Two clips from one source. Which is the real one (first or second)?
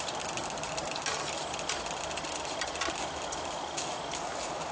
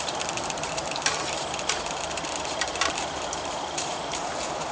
first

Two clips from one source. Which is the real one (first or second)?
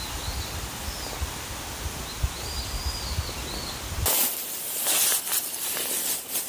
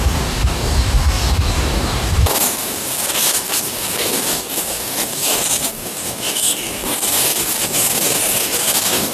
first